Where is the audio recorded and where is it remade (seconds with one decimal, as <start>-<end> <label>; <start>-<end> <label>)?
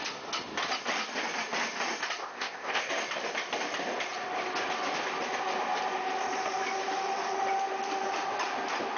0.0-2.2 recorded; 2.2-2.9 remade; 2.9-9.0 recorded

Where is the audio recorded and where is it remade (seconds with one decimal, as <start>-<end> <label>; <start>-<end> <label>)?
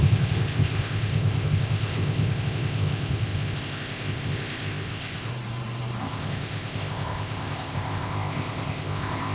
0.0-5.3 remade; 5.3-6.0 recorded; 6.0-9.3 remade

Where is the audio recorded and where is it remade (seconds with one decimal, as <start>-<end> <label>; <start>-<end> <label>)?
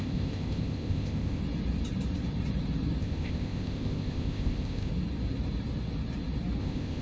0.0-1.4 remade; 1.4-3.0 recorded; 3.0-4.9 remade; 4.9-6.6 recorded; 6.6-7.0 remade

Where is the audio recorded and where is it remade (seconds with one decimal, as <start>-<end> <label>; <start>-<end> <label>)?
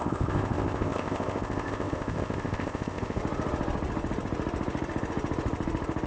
0.0-3.2 remade; 3.2-6.1 recorded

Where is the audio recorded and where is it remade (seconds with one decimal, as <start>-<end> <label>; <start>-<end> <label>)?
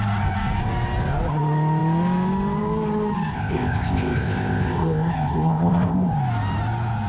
0.0-3.3 recorded; 3.3-6.1 remade; 6.1-7.1 recorded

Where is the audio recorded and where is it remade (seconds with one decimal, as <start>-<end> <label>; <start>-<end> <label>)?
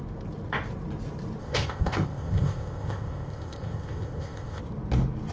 0.0-1.4 recorded; 1.4-4.6 remade; 4.6-5.3 recorded